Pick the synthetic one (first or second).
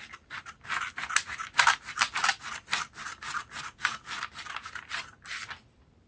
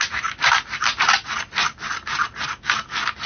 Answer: first